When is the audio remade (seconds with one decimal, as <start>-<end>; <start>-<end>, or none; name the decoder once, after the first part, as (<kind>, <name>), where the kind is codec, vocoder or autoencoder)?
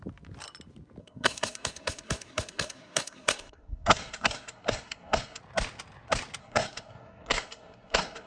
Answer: 1.0-5.4 (codec, SNAC); 6.4-8.3